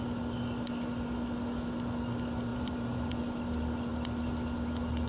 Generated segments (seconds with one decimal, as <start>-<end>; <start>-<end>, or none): 2.5-3.1